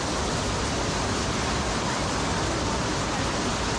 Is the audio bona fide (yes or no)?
yes